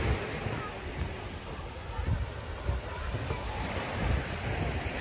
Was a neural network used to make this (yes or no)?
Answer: no